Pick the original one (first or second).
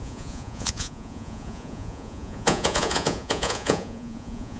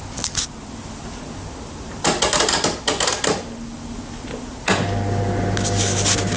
second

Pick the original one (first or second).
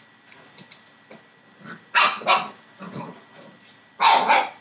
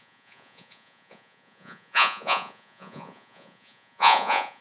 first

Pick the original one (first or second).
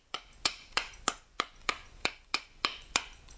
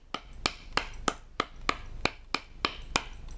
second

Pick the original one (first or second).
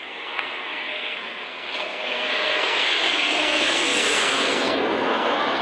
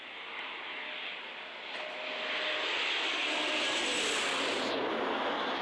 second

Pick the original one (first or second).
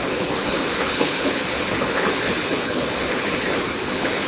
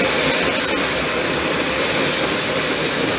second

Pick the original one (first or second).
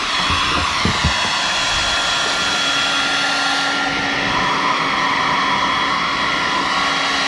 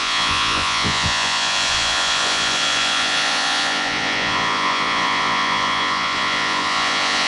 first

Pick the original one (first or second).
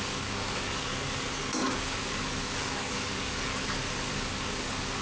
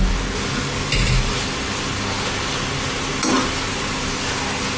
second